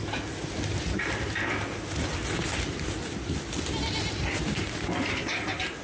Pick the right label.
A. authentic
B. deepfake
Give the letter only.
A